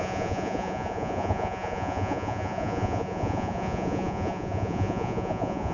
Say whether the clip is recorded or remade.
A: remade